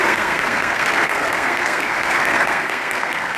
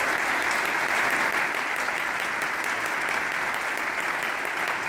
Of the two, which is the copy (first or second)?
first